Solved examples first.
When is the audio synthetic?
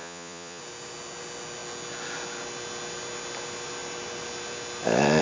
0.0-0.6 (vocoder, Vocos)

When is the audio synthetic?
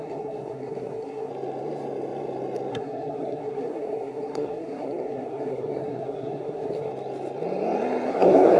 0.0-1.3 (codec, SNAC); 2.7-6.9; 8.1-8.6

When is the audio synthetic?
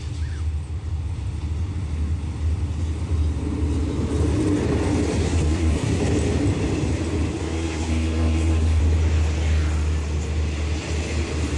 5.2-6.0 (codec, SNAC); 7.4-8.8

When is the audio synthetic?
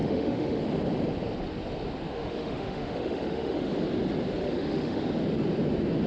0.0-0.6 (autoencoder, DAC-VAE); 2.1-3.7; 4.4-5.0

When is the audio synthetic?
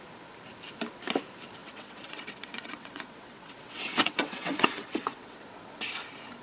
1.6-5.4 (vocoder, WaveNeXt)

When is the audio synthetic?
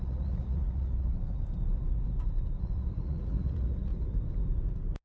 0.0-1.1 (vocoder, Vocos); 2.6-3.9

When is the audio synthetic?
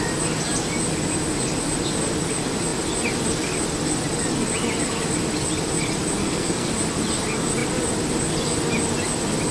6.2-6.7 (codec, SNAC)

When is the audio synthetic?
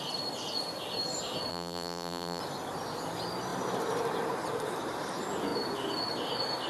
1.5-2.4 (vocoder, BigVGAN v2)